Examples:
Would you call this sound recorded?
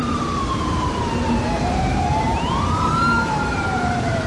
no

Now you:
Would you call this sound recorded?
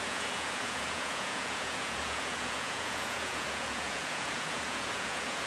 no